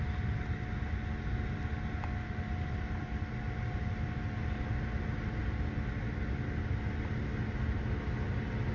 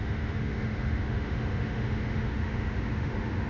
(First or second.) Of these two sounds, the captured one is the first